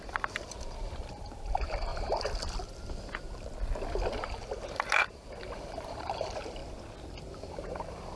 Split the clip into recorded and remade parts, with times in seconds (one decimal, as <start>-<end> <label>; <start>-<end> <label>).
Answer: 0.0-1.9 remade; 1.9-4.1 recorded; 4.1-6.6 remade; 6.6-7.5 recorded; 7.5-8.2 remade